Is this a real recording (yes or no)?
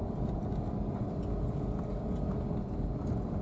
yes